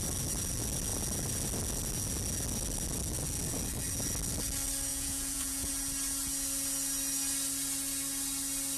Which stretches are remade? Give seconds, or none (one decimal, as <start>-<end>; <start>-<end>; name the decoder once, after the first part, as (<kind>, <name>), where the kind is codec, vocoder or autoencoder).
4.9-5.7 (vocoder, Vocos)